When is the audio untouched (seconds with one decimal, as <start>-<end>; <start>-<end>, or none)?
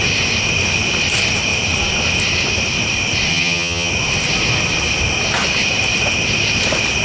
0.0-3.3; 3.9-7.0